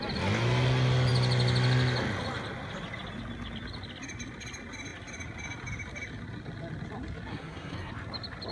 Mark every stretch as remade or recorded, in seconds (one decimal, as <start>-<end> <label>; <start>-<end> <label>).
0.0-7.3 recorded; 7.3-7.9 remade; 7.9-8.5 recorded